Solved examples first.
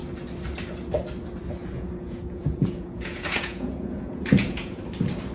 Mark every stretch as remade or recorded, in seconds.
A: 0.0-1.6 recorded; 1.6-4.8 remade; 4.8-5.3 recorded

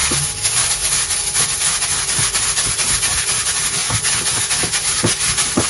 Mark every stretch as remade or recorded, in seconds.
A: 0.0-3.4 recorded; 3.4-3.8 remade; 3.8-4.8 recorded; 4.8-5.7 remade